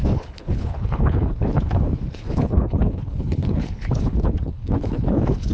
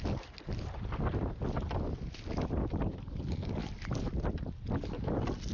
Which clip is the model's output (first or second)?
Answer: first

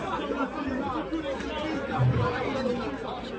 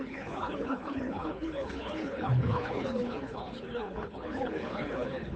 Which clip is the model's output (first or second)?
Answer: second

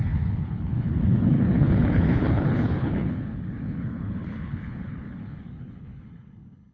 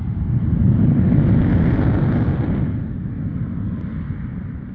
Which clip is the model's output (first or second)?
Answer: first